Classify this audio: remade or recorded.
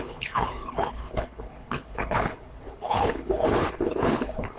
remade